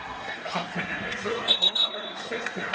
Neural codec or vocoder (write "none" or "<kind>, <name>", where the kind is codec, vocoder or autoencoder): codec, SNAC